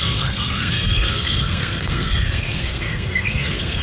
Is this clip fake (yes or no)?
yes